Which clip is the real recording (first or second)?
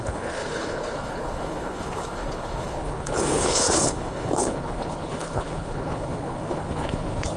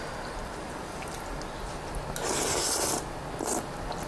second